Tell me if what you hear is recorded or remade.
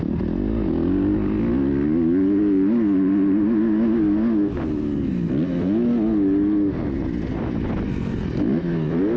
recorded